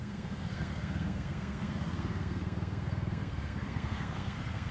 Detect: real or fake fake